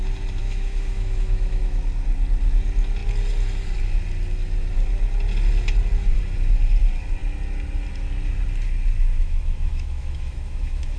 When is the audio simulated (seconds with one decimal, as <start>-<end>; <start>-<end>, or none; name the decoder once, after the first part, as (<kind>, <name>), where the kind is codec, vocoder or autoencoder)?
0.4-1.8 (autoencoder, DAC-VAE); 9.1-11.0